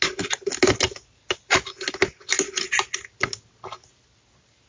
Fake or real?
real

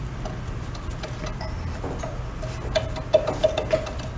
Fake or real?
real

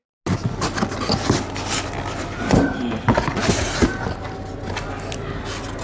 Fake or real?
real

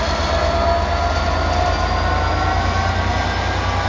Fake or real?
real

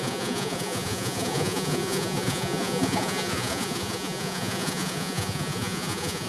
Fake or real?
fake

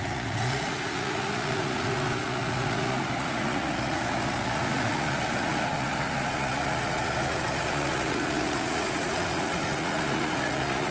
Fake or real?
fake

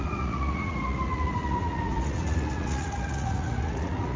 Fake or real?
fake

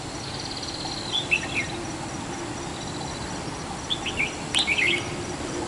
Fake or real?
real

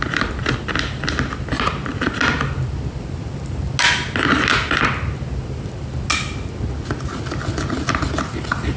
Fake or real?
real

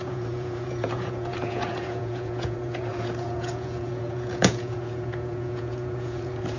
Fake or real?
fake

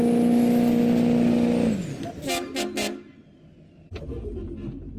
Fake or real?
real